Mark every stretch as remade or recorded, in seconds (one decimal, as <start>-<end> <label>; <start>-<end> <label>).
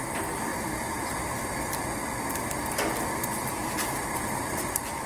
0.0-5.1 recorded